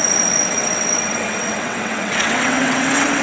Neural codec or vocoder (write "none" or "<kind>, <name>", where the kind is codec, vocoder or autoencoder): vocoder, WaveNeXt